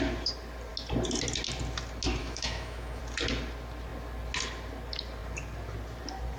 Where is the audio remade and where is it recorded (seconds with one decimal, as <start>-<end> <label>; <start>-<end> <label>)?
0.0-2.2 recorded; 2.2-3.0 remade; 3.0-6.4 recorded